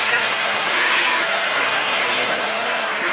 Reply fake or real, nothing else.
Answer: fake